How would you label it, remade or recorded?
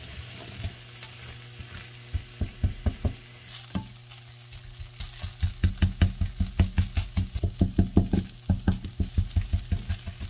recorded